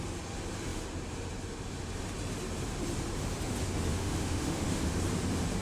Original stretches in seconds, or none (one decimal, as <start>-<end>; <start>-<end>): 0.0-3.9; 5.0-5.6